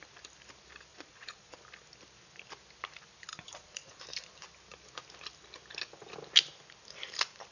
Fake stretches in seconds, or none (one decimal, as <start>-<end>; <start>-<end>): 0.9-1.6; 3.3-4.0